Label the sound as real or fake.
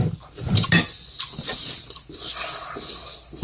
real